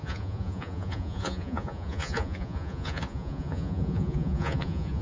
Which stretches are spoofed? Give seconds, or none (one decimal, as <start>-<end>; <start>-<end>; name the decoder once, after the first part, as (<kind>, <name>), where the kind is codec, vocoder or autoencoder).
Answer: 0.0-5.0 (vocoder, Vocos)